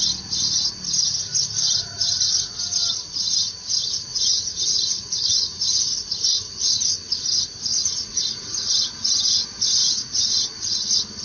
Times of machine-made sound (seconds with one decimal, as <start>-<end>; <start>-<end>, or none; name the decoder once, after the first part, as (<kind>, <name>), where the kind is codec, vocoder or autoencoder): 4.1-5.8 (vocoder, Vocos); 7.7-8.7; 9.8-10.3

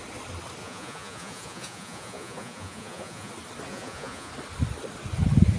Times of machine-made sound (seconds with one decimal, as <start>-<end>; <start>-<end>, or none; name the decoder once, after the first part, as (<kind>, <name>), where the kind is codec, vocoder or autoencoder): 0.6-3.3 (vocoder, Vocos); 3.7-4.3